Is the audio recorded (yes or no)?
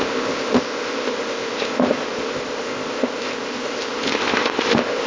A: no